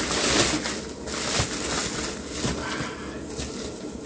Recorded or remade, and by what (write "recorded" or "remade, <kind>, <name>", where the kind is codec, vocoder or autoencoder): recorded